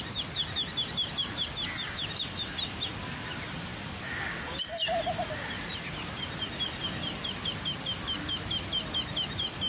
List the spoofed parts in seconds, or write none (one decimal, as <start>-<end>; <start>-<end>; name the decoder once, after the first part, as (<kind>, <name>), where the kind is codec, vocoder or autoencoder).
none